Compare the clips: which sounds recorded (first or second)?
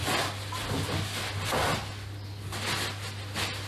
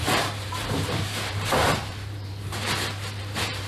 first